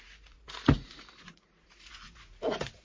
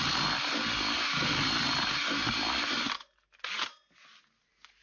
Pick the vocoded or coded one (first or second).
first